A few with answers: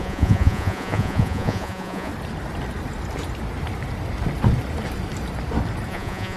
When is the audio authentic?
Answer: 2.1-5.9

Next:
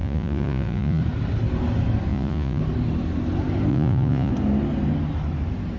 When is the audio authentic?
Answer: 1.0-2.1; 2.6-3.7; 4.3-5.8

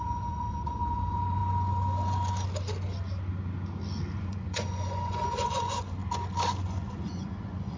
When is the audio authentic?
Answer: 1.4-4.2; 6.0-6.6